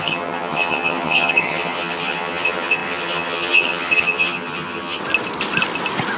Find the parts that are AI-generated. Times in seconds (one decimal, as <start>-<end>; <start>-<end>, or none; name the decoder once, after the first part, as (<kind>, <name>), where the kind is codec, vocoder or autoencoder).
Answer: 0.0-5.0 (vocoder, HiFi-GAN)